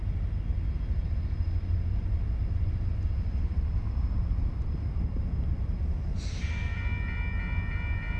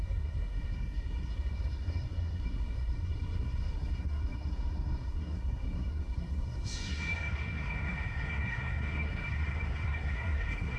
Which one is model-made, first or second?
second